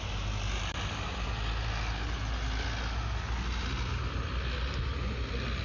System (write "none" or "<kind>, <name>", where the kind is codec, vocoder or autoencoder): none